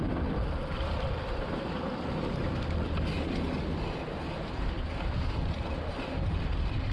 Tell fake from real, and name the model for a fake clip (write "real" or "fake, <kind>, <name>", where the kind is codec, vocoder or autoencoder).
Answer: real